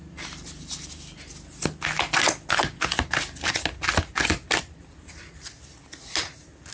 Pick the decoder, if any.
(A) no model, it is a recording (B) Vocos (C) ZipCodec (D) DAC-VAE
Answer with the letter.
A